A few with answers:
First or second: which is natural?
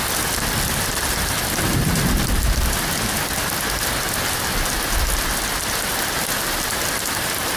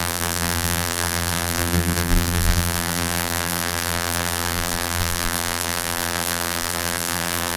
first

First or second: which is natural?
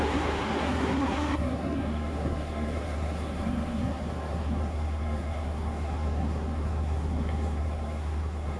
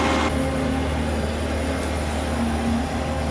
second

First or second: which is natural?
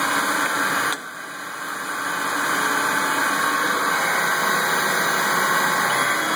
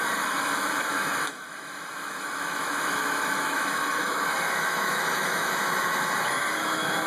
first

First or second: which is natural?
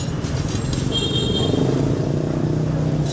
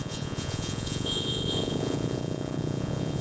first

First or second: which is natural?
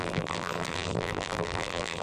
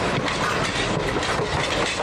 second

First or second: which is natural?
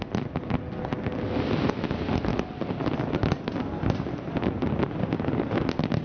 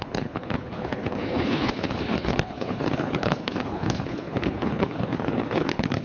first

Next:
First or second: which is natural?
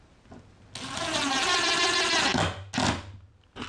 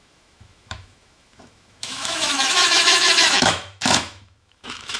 first